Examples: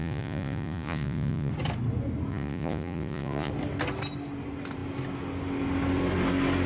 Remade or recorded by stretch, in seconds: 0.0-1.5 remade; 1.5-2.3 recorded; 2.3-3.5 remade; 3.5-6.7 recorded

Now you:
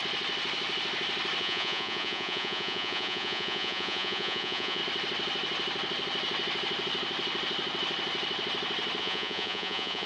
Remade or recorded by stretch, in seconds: 0.0-1.4 recorded; 1.4-4.8 remade; 4.8-9.0 recorded; 9.0-10.1 remade

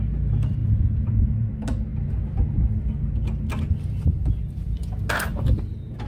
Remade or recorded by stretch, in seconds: 0.0-0.6 recorded; 0.6-1.5 remade; 1.5-6.1 recorded

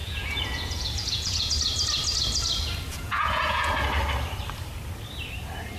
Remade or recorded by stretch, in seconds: 0.0-1.5 remade; 1.5-2.9 recorded; 2.9-3.7 remade; 3.7-5.8 recorded

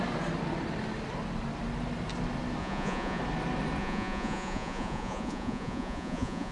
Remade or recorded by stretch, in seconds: 0.0-2.6 recorded; 2.6-3.2 remade; 3.2-3.8 recorded; 3.8-6.5 remade

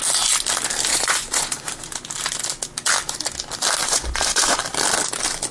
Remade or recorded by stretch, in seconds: 0.0-0.9 recorded; 0.9-1.6 remade; 1.6-3.8 recorded; 3.8-4.6 remade; 4.6-5.5 recorded

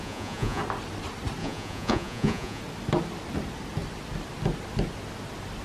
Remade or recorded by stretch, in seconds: 0.0-0.6 remade; 0.6-1.4 recorded; 1.4-2.6 remade; 2.6-5.6 recorded